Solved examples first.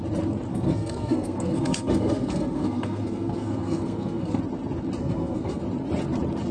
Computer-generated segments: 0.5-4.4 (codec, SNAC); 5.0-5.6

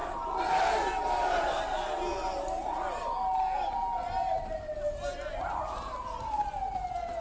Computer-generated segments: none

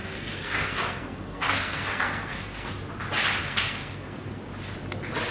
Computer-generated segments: 0.0-2.7 (codec, SNAC); 3.4-4.4

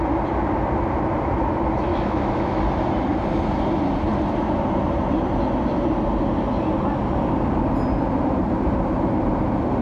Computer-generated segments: 1.9-2.6 (autoencoder, DAC-VAE)